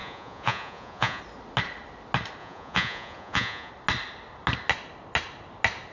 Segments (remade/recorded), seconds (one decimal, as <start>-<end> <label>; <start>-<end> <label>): 0.0-1.2 remade; 1.2-2.4 recorded; 2.4-3.7 remade; 3.7-5.9 recorded

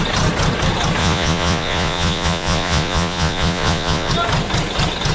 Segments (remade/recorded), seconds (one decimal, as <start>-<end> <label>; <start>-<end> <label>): 0.0-1.0 recorded; 1.0-4.1 remade; 4.1-5.1 recorded

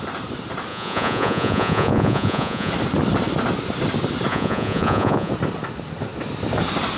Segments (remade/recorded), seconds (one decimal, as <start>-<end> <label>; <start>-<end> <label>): 0.0-0.7 recorded; 0.7-2.7 remade; 2.7-4.3 recorded; 4.3-5.3 remade; 5.3-7.0 recorded

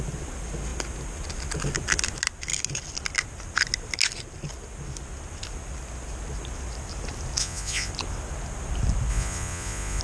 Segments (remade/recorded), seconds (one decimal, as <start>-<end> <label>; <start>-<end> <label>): 0.0-7.4 recorded; 7.4-7.9 remade; 7.9-9.1 recorded; 9.1-10.0 remade

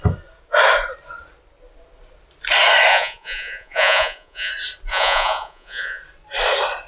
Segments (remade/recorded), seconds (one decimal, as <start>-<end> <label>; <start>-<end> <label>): 0.0-2.9 recorded; 2.9-4.5 remade; 4.5-4.9 recorded; 4.9-6.0 remade; 6.0-6.9 recorded